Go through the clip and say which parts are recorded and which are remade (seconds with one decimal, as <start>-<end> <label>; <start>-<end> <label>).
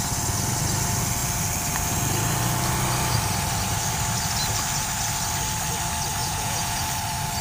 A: 0.0-6.2 recorded; 6.2-6.8 remade; 6.8-7.4 recorded